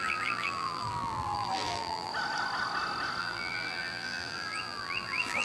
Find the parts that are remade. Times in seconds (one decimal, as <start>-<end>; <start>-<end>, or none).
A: 0.0-2.1; 3.2-5.4